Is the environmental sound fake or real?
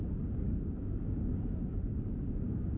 fake